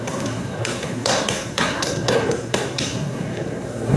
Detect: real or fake fake